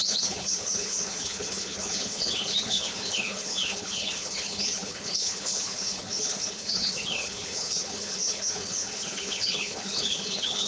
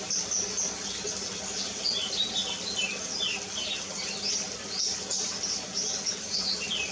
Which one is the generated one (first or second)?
first